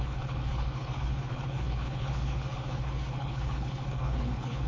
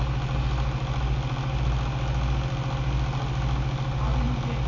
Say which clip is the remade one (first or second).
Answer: first